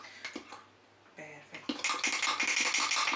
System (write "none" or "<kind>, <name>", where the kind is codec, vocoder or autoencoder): none